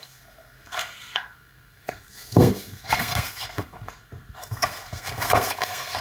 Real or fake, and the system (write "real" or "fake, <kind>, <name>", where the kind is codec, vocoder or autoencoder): fake, codec, SNAC